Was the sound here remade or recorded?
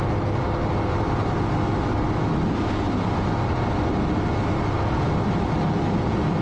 recorded